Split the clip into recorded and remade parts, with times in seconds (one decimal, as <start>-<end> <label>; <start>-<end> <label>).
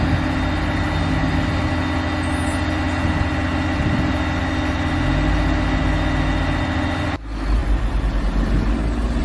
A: 0.0-9.2 recorded